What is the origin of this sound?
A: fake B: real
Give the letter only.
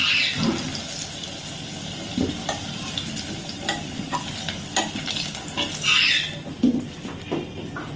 B